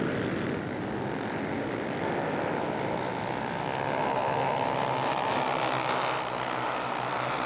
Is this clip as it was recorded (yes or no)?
yes